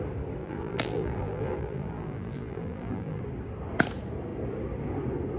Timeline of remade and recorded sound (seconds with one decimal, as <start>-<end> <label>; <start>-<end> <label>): 0.0-0.4 recorded; 0.4-3.2 remade; 3.2-5.4 recorded